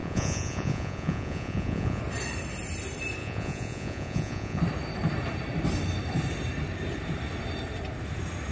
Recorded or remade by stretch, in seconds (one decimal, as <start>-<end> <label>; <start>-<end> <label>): 0.0-2.0 remade; 2.0-3.2 recorded; 3.2-4.6 remade; 4.6-8.5 recorded